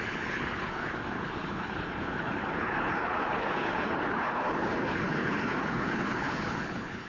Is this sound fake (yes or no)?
yes